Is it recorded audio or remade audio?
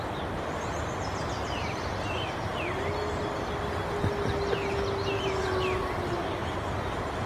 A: recorded